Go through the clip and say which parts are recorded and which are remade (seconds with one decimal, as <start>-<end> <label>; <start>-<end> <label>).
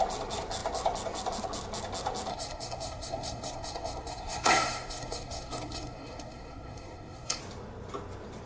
0.0-2.3 recorded; 2.3-7.4 remade; 7.4-8.5 recorded